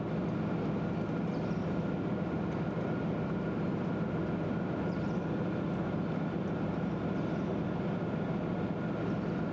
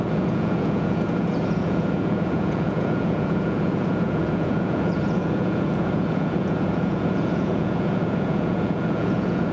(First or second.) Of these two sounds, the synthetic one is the second